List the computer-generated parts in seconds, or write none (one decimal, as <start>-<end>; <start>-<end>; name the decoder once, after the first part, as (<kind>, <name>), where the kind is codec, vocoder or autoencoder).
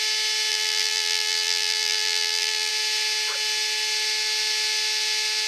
0.5-2.7 (vocoder, BigVGAN v2)